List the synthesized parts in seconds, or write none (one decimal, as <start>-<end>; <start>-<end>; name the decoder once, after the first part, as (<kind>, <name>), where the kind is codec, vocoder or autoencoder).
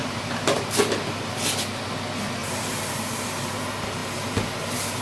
0.0-0.9 (vocoder, BigVGAN v2); 2.4-3.1